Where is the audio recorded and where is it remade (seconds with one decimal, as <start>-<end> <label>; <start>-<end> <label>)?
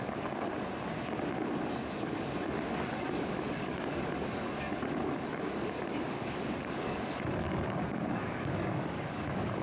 0.0-0.5 remade; 0.5-2.0 recorded; 2.0-9.6 remade